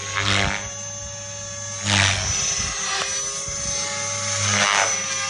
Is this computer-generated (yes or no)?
no